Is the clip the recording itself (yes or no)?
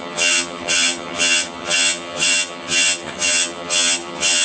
no